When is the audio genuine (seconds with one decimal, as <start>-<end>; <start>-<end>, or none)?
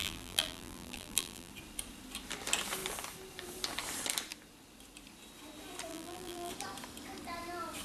1.5-5.9; 6.5-7.8